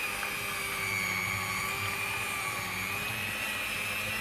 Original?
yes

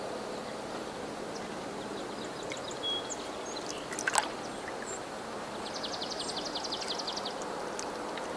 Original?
yes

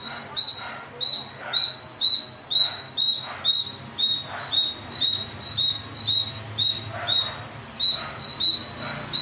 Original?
yes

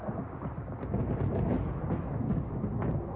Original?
yes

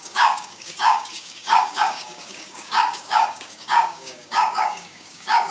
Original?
no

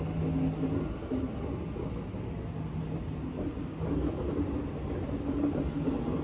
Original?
yes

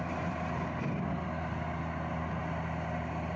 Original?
yes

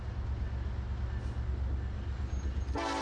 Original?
yes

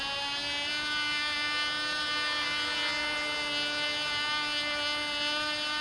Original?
yes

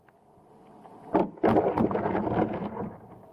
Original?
yes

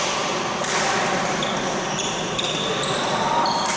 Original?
yes